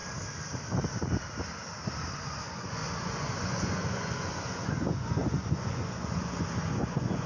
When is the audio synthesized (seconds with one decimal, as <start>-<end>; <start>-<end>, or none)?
2.1-7.3